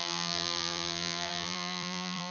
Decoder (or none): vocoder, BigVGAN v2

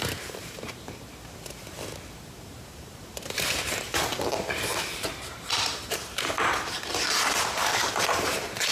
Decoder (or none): vocoder, BigVGAN v2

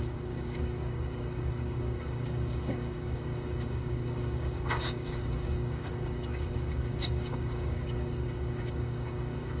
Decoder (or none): codec, DAC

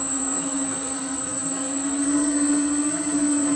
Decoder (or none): codec, SNAC